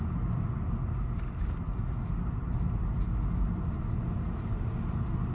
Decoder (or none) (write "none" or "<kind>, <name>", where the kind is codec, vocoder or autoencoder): none